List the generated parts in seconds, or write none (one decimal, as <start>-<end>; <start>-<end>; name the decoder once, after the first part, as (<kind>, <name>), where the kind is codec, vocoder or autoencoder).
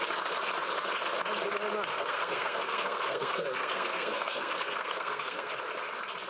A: 1.9-5.5 (codec, SNAC)